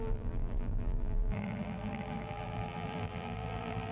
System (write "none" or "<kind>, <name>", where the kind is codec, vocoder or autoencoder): vocoder, BigVGAN v2